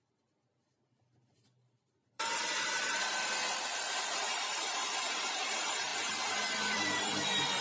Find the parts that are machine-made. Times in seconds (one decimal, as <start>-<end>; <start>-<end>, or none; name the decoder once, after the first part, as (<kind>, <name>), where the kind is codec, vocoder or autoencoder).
0.0-5.9 (vocoder, BigVGAN v2); 6.5-7.6